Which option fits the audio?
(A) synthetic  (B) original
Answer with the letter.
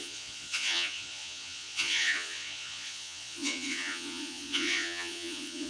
A